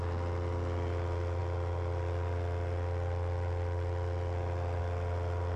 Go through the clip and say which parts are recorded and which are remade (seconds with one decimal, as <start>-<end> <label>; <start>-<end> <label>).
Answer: 0.0-5.6 recorded